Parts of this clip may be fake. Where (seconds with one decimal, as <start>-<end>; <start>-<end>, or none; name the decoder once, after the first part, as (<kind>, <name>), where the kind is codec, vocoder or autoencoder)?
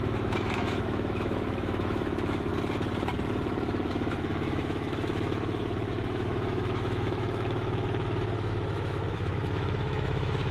0.0-2.5 (autoencoder, DAC-VAE); 3.9-10.5